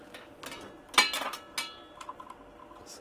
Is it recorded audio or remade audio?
recorded